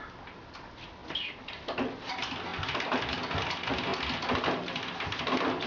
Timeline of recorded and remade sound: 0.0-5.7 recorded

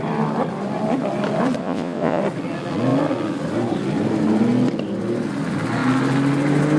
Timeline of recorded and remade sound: 0.0-1.6 recorded; 1.6-2.2 remade; 2.2-6.8 recorded

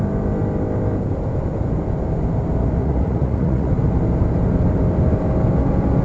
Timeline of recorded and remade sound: 0.0-2.8 recorded; 2.8-3.7 remade; 3.7-6.0 recorded

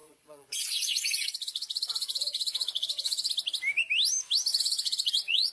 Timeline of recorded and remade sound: 0.0-3.3 remade; 3.3-4.5 recorded; 4.5-5.5 remade

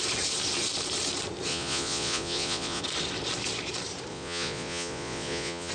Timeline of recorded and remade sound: 0.0-1.5 recorded; 1.5-2.8 remade; 2.8-4.1 recorded; 4.1-5.7 remade